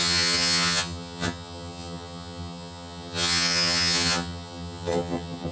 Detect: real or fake fake